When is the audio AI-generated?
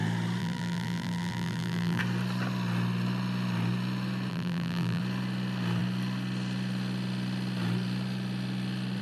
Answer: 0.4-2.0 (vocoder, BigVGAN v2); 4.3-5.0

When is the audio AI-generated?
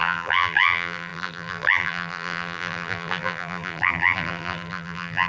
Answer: 0.0-5.3 (vocoder, BigVGAN v2)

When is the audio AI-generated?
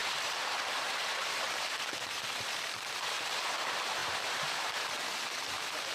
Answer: 0.0-3.5 (vocoder, BigVGAN v2); 4.0-4.9